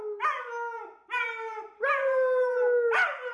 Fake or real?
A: real